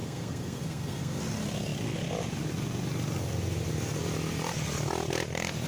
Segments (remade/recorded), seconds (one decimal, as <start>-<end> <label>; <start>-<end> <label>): 0.0-1.2 remade; 1.2-5.7 recorded